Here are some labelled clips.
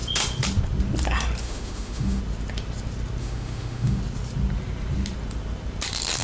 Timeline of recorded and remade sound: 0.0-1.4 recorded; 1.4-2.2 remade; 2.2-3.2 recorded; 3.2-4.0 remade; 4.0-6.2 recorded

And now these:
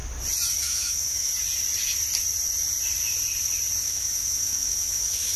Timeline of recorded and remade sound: 0.0-0.6 recorded; 0.6-1.3 remade; 1.3-3.8 recorded; 3.8-5.4 remade

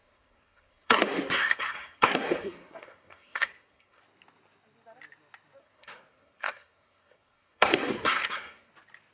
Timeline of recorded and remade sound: 0.0-4.0 remade; 4.0-5.6 recorded; 5.6-8.7 remade; 8.7-9.1 recorded